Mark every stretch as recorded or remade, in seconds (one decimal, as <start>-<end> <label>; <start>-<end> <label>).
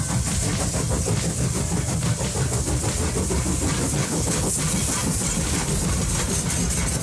0.0-4.0 recorded; 4.0-4.5 remade; 4.5-7.0 recorded